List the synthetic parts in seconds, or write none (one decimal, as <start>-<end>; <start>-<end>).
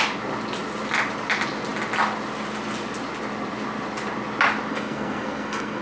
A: 4.7-5.8